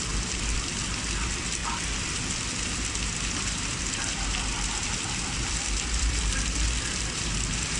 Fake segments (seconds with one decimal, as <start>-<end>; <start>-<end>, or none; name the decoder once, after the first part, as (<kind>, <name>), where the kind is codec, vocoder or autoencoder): 0.0-7.8 (vocoder, BigVGAN v2)